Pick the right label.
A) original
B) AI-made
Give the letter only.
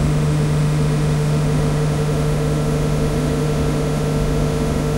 B